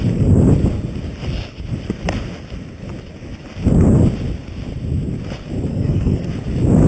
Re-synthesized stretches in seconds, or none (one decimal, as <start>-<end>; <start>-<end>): 5.7-6.3